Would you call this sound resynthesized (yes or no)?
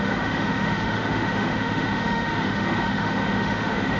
yes